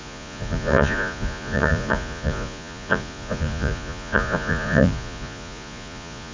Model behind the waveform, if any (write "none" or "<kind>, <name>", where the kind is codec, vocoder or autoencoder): vocoder, Vocos